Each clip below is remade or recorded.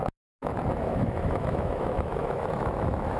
remade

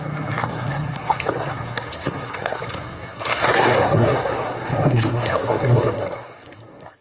remade